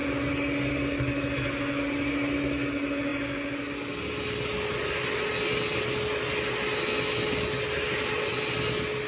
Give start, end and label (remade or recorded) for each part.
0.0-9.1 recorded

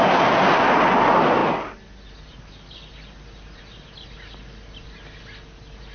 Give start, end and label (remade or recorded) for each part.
0.0-5.9 recorded

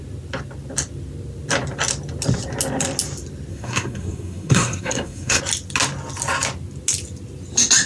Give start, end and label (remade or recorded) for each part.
0.0-3.5 recorded; 3.5-5.4 remade; 5.4-7.9 recorded

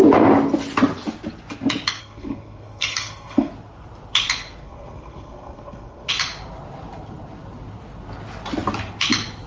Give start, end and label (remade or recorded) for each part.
0.0-2.0 recorded; 2.0-3.5 remade; 3.5-4.6 recorded; 4.6-6.1 remade; 6.1-9.5 recorded

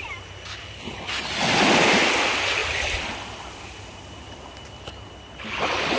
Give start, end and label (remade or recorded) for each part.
0.0-6.0 recorded